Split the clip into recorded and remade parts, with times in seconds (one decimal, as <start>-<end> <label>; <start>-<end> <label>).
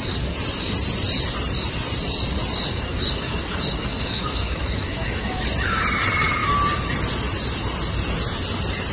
0.0-2.7 recorded; 2.7-5.4 remade; 5.4-8.9 recorded